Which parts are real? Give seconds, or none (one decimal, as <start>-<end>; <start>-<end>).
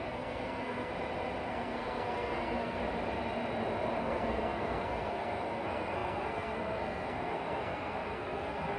0.9-1.5; 2.8-4.0